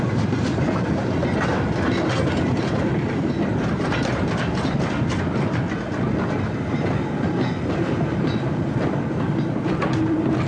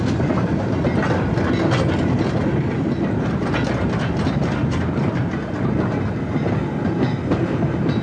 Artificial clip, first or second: first